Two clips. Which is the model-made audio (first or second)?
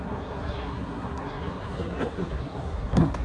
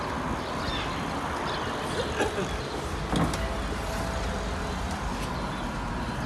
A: first